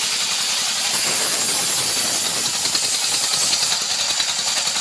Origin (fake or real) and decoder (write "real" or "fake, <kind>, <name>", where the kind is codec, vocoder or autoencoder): real